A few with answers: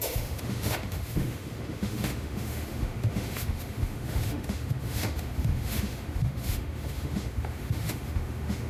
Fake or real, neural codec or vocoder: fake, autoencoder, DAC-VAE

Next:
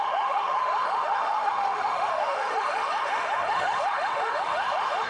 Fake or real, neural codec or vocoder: fake, autoencoder, DAC-VAE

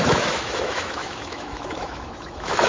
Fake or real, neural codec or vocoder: fake, autoencoder, DAC-VAE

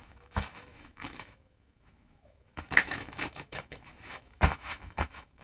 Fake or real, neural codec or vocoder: fake, autoencoder, DAC-VAE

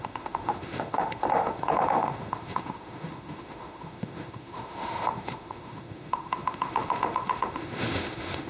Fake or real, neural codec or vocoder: fake, autoencoder, DAC-VAE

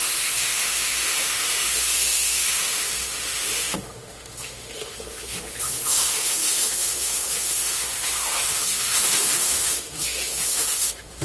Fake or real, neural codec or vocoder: fake, autoencoder, DAC-VAE